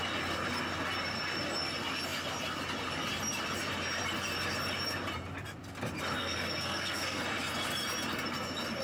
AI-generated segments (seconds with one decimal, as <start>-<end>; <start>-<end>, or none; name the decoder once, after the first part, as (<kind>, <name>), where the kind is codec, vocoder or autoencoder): 6.2-7.2 (codec, SNAC)